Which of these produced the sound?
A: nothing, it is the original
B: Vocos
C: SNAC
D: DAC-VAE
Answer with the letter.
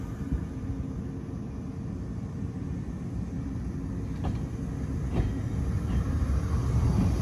A